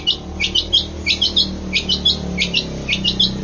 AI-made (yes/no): no